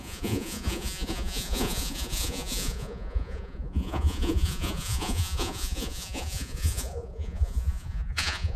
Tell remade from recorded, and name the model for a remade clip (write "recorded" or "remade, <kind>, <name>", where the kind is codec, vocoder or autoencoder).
remade, vocoder, Vocos